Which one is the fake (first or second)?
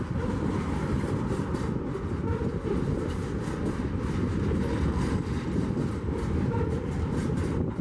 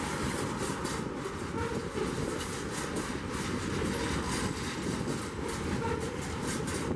first